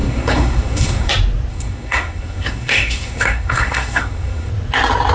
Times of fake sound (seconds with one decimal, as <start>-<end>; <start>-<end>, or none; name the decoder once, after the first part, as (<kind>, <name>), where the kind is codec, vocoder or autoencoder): 0.0-1.1 (codec, SNAC); 1.5-4.5